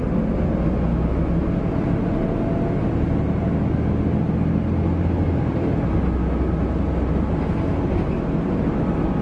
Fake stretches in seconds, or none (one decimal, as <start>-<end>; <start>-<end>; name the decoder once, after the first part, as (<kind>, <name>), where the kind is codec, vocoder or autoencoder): 0.9-1.4 (autoencoder, DAC-VAE)